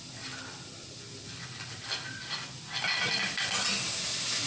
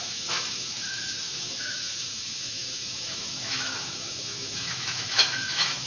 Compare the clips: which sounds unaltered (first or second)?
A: first